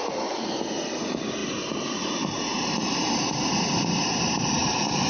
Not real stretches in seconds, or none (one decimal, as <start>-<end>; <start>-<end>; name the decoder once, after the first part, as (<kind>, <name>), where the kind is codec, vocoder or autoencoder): 0.0-5.1 (vocoder, BigVGAN v2)